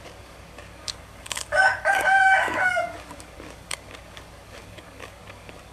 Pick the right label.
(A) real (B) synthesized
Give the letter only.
B